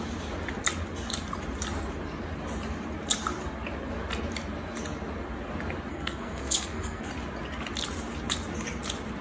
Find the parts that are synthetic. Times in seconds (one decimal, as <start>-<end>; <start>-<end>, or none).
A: 5.9-7.1